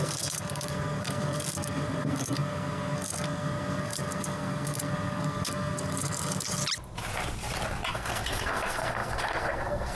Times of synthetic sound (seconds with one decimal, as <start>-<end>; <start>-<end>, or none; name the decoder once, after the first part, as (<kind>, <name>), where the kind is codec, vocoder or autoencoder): 0.0-6.6 (codec, SNAC); 7.9-10.0